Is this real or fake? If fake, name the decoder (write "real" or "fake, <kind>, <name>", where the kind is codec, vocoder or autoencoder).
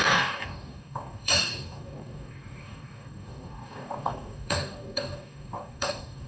fake, codec, DAC